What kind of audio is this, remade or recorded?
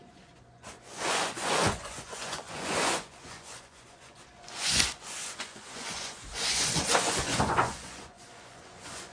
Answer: remade